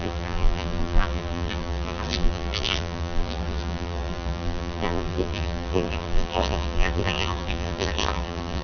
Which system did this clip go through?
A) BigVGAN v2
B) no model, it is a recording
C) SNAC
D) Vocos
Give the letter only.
A